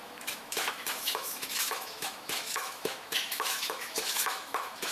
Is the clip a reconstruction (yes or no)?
yes